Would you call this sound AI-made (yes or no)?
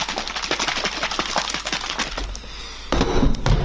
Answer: no